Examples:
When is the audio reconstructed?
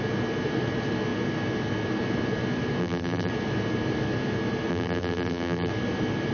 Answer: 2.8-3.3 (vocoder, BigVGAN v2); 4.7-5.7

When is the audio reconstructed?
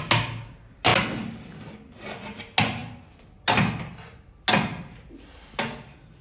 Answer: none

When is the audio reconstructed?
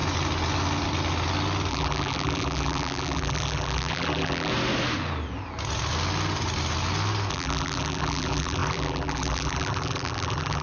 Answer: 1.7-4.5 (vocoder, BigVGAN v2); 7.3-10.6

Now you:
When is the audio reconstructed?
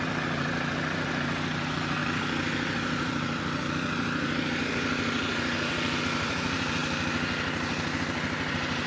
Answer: 0.0-6.8 (vocoder, BigVGAN v2); 8.5-8.9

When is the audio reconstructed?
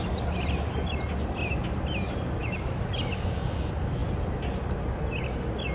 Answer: 2.4-2.9 (autoencoder, DAC-VAE)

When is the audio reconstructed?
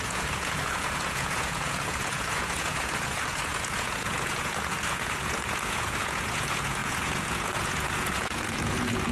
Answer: 0.0-9.1 (vocoder, Vocos)